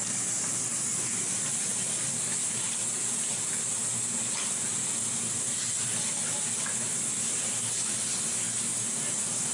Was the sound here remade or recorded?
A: recorded